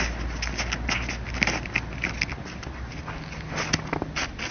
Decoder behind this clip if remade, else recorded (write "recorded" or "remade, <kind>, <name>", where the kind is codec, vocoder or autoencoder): recorded